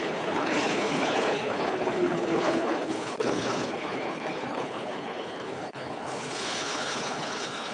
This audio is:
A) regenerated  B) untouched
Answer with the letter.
A